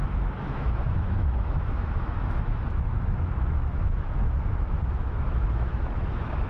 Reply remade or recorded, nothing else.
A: remade